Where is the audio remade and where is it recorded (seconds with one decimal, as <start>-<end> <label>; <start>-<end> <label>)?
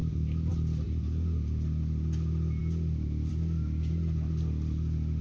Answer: 0.0-5.2 recorded